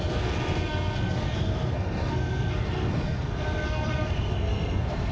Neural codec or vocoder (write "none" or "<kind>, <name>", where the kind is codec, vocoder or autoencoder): codec, SNAC